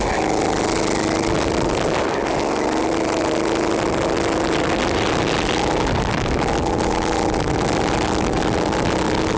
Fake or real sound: real